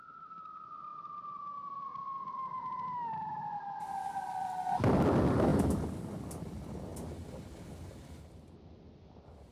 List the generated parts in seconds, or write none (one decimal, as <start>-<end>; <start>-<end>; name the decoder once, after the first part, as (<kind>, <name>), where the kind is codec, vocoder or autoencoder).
none